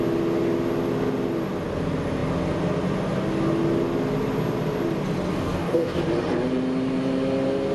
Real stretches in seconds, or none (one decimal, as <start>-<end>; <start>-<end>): 0.0-5.3; 6.0-7.7